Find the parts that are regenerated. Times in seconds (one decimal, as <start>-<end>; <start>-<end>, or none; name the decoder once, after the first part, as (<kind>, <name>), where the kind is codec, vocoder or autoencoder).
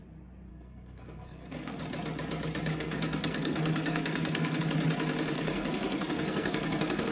0.5-1.8 (codec, SNAC); 2.7-4.6; 5.3-7.1